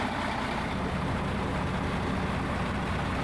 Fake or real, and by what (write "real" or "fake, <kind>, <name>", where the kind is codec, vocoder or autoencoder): real